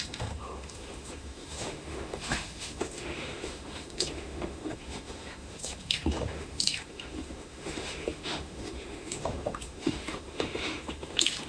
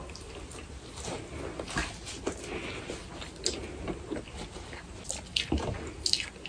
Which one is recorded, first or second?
second